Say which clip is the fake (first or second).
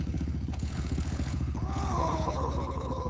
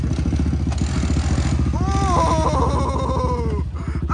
first